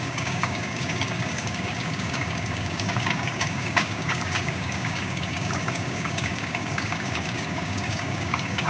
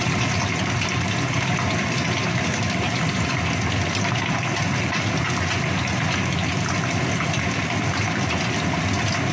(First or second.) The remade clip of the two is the first